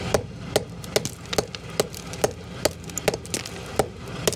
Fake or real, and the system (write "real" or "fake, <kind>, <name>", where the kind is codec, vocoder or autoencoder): real